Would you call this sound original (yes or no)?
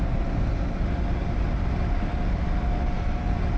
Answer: yes